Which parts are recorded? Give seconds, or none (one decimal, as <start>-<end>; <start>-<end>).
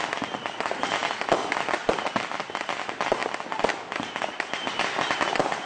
0.0-5.7